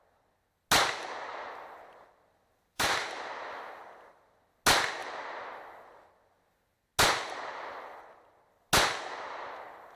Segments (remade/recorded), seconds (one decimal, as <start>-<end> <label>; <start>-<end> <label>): 0.0-1.3 recorded; 1.3-3.9 remade; 3.9-10.0 recorded